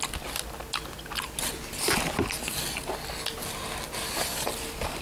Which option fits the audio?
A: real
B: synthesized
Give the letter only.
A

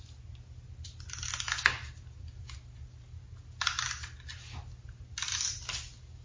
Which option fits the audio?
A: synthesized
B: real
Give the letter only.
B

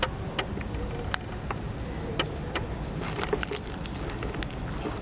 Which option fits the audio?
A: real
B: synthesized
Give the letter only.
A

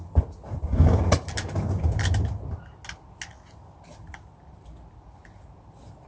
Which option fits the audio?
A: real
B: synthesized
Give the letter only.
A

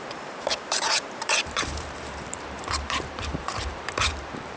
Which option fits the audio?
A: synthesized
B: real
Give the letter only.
A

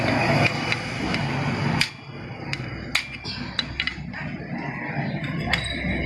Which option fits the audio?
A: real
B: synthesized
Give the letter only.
A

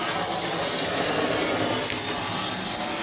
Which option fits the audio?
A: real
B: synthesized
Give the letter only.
A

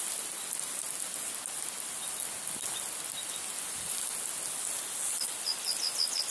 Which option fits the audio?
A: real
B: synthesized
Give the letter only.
A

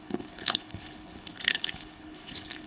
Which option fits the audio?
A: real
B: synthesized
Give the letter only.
B